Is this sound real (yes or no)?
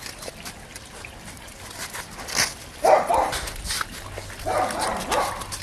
yes